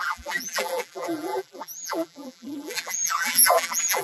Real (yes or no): no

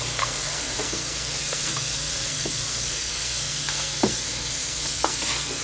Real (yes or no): no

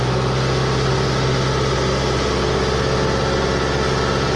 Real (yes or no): yes